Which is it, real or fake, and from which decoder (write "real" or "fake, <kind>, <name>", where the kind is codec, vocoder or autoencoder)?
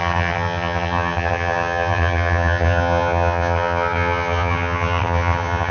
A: fake, vocoder, HiFi-GAN